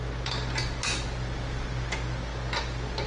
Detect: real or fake real